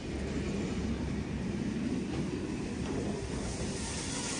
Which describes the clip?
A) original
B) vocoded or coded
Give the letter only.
A